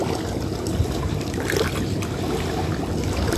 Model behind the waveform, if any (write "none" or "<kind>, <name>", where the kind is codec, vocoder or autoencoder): none